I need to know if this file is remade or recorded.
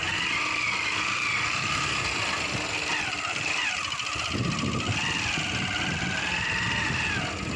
recorded